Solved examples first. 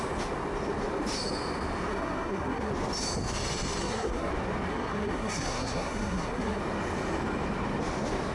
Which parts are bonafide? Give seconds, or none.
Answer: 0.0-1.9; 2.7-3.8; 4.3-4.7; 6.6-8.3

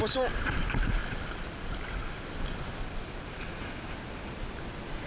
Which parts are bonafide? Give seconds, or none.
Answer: 0.0-1.0; 2.2-2.8; 3.4-5.1

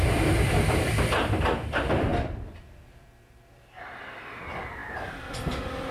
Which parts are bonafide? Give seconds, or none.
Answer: none

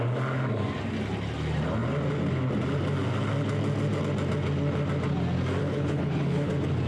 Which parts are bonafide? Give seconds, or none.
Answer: 0.0-5.6; 6.5-6.9